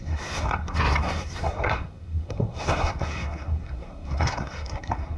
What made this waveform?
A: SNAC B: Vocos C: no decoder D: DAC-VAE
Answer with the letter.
A